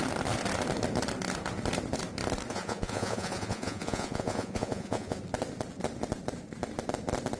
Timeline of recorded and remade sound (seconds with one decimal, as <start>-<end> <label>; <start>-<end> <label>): 0.0-2.5 recorded; 2.5-5.2 remade; 5.2-7.4 recorded